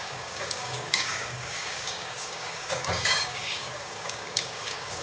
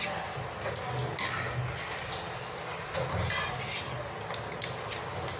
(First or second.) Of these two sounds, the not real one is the first